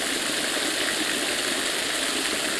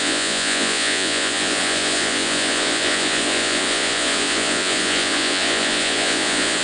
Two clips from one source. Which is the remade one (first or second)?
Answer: second